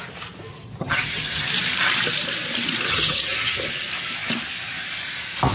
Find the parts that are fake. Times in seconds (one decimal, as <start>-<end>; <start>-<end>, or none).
0.5-1.5; 2.9-3.7